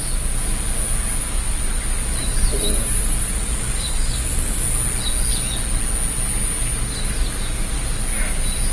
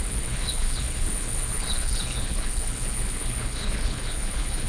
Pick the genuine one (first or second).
first